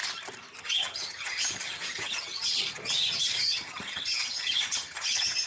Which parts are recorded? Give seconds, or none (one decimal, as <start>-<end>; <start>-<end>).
0.0-0.6